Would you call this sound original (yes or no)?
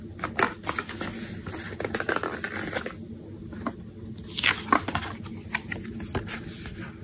yes